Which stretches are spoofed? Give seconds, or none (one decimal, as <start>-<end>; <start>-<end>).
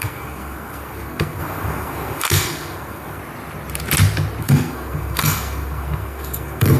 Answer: 0.0-3.2; 4.4-6.8